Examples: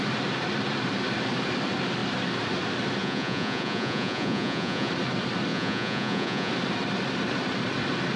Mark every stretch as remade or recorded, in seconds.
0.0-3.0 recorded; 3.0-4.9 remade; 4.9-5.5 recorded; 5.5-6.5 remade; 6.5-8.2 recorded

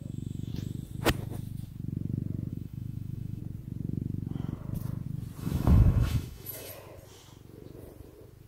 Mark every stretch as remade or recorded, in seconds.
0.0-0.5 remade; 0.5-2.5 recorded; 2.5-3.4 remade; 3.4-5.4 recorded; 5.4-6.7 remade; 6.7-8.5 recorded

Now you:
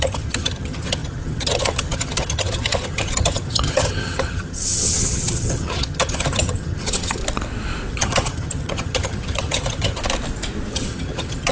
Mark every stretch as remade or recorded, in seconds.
0.0-7.2 remade; 7.2-7.9 recorded; 7.9-10.0 remade; 10.0-10.7 recorded; 10.7-11.5 remade

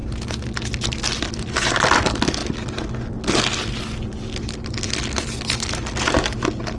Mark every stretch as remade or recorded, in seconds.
0.0-6.8 recorded